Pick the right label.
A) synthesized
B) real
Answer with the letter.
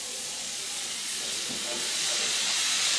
A